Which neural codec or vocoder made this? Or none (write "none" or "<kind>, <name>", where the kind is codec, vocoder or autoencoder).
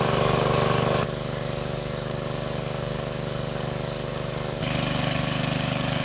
codec, DAC